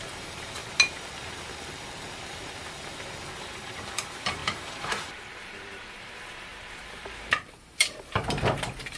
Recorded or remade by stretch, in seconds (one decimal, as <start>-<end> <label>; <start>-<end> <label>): 0.0-0.6 remade; 0.6-3.4 recorded; 3.4-9.0 remade